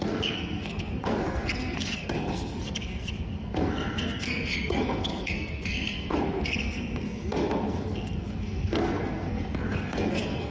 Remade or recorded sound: remade